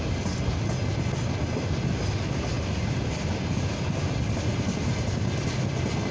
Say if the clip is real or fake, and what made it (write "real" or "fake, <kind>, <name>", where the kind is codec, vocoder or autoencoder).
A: real